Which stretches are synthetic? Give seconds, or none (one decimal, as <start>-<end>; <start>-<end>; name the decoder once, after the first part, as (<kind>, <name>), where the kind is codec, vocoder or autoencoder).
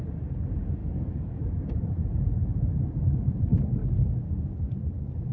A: 0.8-1.4 (codec, DAC); 3.8-4.6